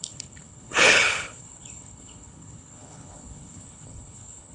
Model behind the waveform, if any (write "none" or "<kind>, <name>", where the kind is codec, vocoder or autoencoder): codec, HILCodec